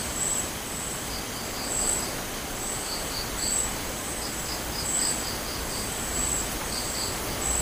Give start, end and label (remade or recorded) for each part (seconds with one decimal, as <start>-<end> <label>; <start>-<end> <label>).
0.0-7.6 recorded